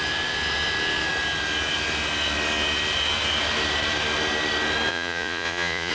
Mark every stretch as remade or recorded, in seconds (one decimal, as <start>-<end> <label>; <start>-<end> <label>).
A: 0.0-4.9 recorded; 4.9-5.9 remade